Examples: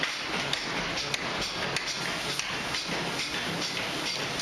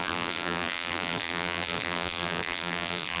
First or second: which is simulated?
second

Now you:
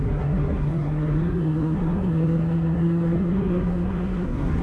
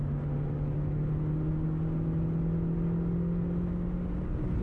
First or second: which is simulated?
first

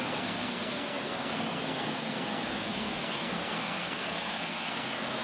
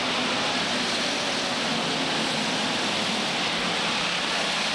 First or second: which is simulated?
first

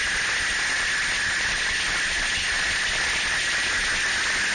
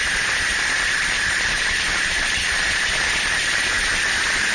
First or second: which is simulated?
second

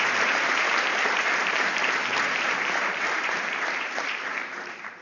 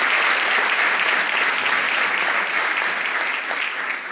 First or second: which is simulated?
first